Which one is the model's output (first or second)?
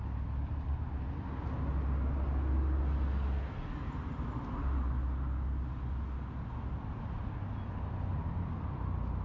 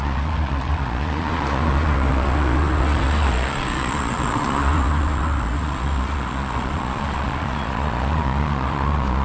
second